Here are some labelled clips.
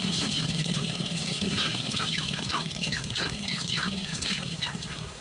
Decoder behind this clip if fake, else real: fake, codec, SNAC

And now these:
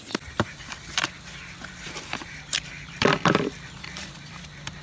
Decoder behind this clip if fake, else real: fake, vocoder, BigVGAN v2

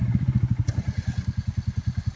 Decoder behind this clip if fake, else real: real